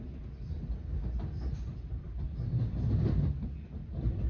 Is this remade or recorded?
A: recorded